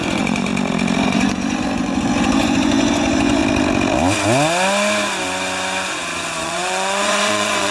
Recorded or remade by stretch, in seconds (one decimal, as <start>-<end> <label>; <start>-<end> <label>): 0.0-0.5 remade; 0.5-1.0 recorded; 1.0-3.4 remade; 3.4-6.4 recorded; 6.4-7.7 remade